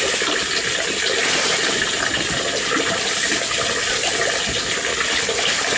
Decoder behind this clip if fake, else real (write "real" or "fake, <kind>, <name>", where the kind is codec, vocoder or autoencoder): real